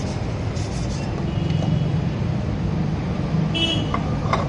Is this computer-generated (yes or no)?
no